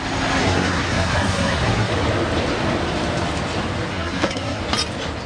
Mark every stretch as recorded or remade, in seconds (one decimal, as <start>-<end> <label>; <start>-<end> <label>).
0.0-0.4 recorded; 0.4-1.9 remade; 1.9-3.9 recorded; 3.9-4.6 remade; 4.6-5.3 recorded